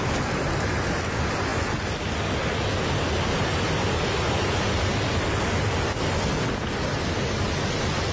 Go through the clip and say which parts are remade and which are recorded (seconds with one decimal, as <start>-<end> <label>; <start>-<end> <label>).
0.0-8.1 recorded

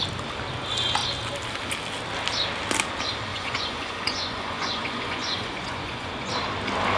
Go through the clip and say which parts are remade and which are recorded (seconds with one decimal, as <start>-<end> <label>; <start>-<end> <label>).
0.0-3.3 recorded; 3.3-6.3 remade; 6.3-7.0 recorded